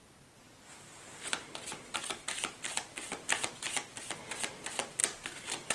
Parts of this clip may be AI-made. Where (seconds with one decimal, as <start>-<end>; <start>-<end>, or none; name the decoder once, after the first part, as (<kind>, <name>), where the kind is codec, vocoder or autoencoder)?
none